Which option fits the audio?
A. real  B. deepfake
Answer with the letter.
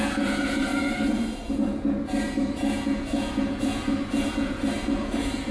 B